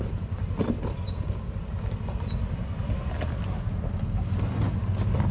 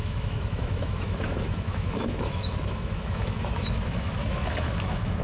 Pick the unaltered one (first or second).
first